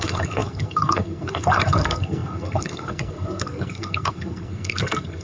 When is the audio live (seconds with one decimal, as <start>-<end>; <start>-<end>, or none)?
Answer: none